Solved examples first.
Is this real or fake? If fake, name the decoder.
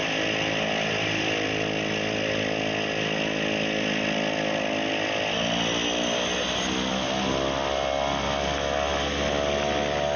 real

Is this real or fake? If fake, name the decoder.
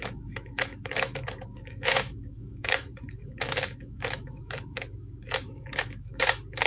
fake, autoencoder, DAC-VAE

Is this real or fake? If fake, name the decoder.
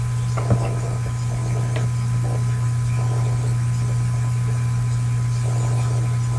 real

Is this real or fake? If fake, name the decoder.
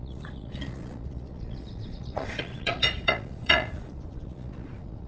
fake, vocoder, Vocos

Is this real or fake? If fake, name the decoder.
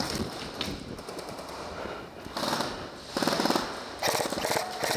real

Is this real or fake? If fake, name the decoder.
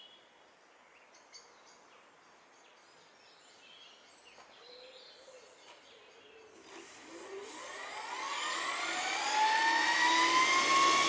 real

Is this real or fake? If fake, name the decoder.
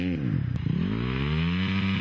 real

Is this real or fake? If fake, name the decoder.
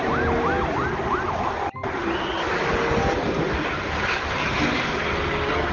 real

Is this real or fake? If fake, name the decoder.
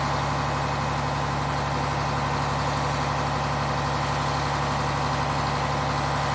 real